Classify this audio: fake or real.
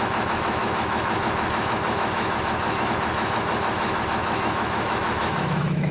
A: fake